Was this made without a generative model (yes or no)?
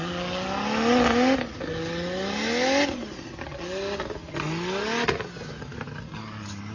yes